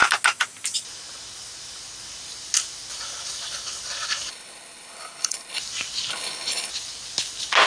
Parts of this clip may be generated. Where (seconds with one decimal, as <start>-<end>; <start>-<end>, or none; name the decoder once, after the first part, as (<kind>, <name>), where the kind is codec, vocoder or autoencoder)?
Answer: 4.3-5.6 (codec, HILCodec); 6.1-6.7